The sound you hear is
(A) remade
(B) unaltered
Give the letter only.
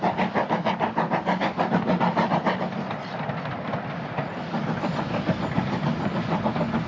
B